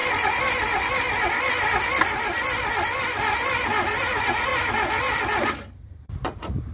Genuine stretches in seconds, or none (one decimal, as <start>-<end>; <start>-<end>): 0.0-4.0; 4.5-5.8